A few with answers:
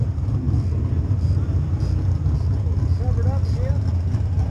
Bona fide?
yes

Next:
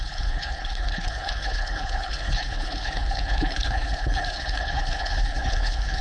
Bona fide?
no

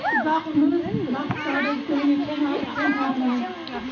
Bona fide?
yes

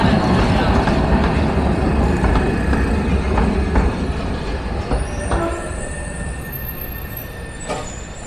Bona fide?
yes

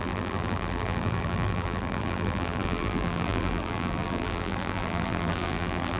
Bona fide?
no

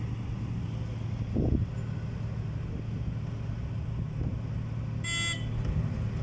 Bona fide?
yes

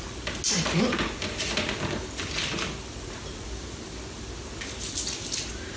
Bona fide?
yes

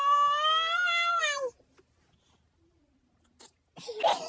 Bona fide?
yes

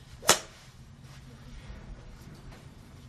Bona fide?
no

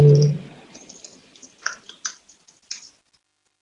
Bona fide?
yes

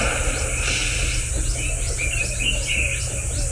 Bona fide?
yes